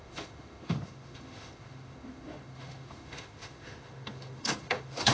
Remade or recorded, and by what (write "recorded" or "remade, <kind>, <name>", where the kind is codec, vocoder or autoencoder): remade, autoencoder, DAC-VAE